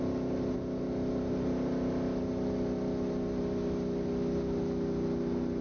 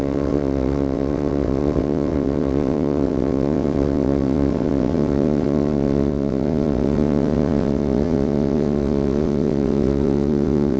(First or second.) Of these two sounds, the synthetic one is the second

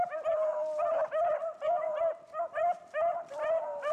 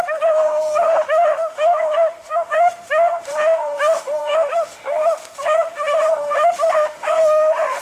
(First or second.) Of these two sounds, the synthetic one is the second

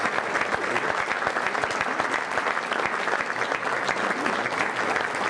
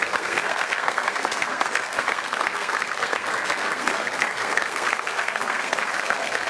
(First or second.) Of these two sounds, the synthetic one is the second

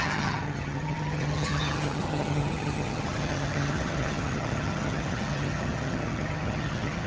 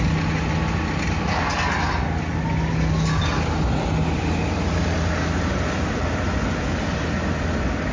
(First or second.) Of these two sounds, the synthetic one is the first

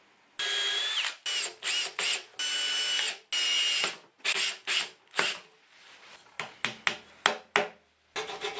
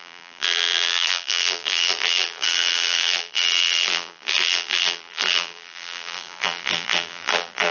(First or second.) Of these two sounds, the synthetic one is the second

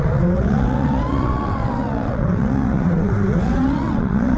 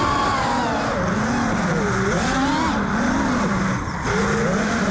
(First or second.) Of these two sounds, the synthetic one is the first